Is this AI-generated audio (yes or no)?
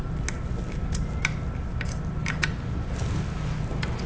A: no